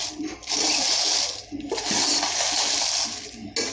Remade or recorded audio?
recorded